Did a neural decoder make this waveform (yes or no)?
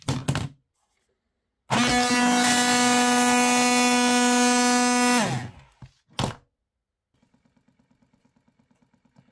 no